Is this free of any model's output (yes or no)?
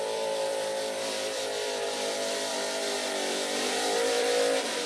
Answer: no